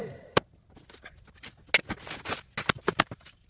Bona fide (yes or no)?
yes